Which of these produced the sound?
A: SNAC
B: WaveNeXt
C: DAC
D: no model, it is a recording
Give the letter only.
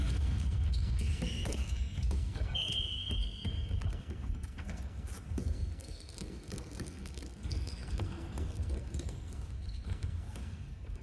A